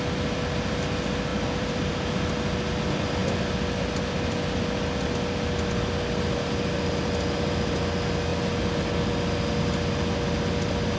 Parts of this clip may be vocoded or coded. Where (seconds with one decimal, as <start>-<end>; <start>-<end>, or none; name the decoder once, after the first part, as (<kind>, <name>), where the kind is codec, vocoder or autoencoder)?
1.3-2.3 (vocoder, BigVGAN v2)